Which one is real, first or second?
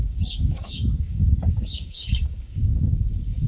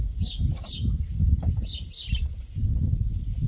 second